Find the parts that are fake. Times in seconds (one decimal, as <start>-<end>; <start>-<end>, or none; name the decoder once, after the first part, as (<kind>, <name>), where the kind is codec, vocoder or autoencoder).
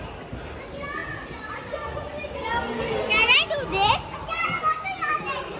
none